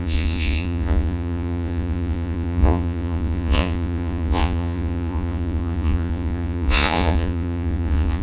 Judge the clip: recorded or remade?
remade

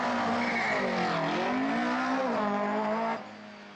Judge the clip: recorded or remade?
recorded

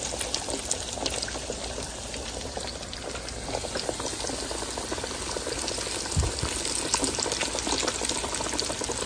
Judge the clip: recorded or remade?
recorded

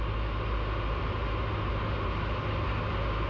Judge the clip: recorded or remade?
recorded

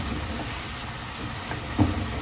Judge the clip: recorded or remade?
recorded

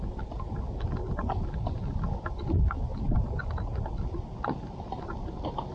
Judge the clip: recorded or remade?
recorded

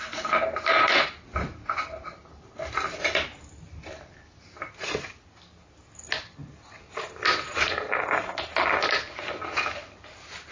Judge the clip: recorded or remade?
recorded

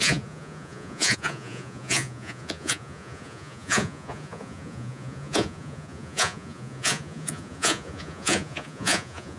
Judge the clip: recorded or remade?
remade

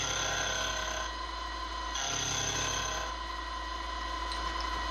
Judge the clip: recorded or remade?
recorded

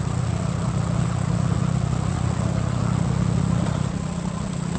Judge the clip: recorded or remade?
remade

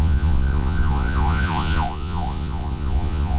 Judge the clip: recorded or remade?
remade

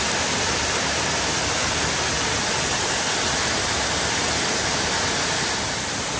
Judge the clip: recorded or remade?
recorded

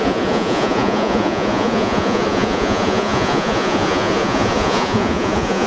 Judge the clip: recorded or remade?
remade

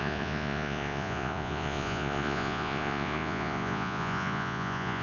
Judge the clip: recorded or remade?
remade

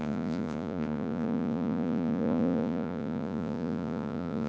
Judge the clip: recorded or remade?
remade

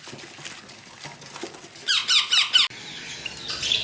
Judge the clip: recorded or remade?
recorded